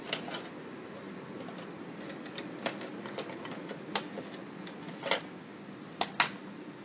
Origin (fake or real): real